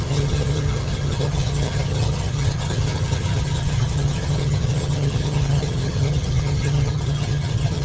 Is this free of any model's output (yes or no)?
no